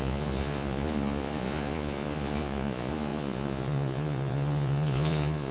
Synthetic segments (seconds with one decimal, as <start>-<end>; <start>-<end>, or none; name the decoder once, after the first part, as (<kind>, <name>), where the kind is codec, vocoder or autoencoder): 0.0-5.5 (vocoder, Vocos)

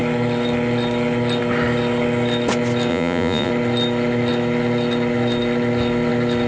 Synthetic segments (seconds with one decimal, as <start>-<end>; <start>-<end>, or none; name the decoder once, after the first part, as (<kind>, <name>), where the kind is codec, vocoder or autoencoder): 2.9-3.5 (vocoder, Vocos)

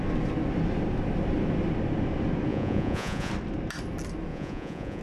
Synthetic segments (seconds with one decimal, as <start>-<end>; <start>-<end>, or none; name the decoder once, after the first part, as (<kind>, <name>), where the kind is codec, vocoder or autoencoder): 2.5-3.3 (vocoder, Vocos); 4.3-5.0

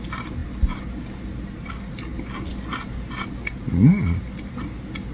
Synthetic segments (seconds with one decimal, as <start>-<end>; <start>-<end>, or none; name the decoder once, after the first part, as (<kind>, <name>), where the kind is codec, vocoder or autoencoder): none

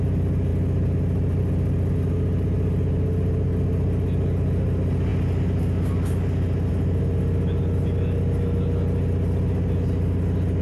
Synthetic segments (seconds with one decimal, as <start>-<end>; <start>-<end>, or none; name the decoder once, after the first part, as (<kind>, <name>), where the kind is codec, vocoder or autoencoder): none

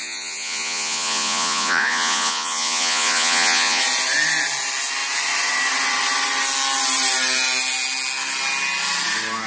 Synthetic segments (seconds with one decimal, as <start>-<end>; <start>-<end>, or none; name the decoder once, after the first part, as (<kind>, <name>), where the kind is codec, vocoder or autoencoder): 0.0-3.8 (vocoder, Vocos)

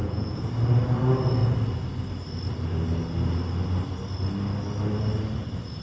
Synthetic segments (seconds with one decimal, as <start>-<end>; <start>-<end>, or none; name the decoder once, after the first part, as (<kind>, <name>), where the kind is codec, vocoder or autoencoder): 0.0-0.5 (vocoder, Vocos)

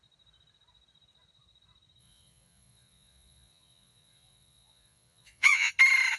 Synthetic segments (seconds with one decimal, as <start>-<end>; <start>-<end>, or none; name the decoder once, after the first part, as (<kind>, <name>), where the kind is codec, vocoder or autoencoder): 2.0-5.7 (vocoder, Vocos)